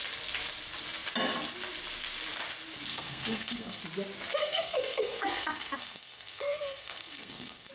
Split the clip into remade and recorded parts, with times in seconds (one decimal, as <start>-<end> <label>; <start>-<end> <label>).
0.0-2.9 recorded; 2.9-3.8 remade; 3.8-4.4 recorded; 4.4-7.7 remade